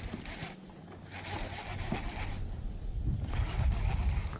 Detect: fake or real real